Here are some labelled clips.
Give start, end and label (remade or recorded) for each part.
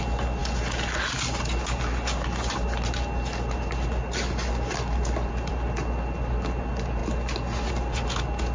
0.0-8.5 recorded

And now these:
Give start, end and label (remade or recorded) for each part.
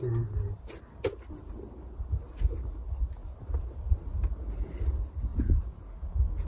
0.0-5.3 recorded; 5.3-5.9 remade; 5.9-6.5 recorded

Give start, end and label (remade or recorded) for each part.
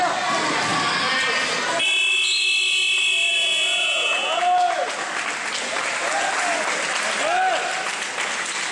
0.0-3.3 recorded; 3.3-4.4 remade; 4.4-8.7 recorded